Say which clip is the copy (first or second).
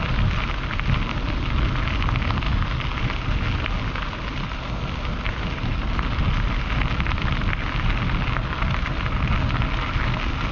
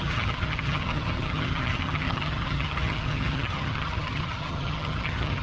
second